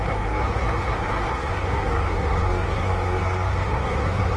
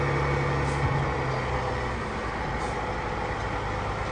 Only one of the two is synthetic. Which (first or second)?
first